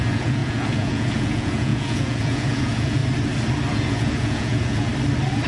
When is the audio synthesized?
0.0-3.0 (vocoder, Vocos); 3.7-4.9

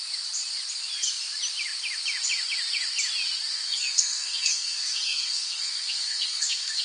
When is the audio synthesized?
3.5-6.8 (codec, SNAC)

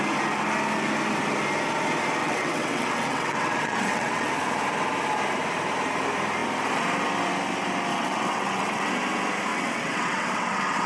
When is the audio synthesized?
2.2-4.3 (vocoder, WaveNeXt); 7.9-8.9; 9.5-10.9

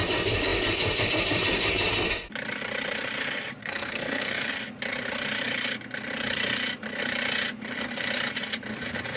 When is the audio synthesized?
3.6-4.5 (codec, SNAC)

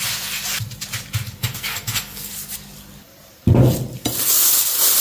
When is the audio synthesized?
1.4-2.3 (codec, SNAC)